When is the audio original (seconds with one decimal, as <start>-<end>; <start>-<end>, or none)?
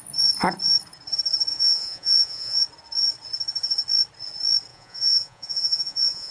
0.0-1.5; 2.6-4.7